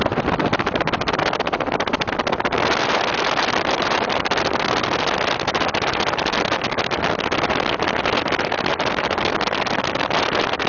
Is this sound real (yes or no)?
no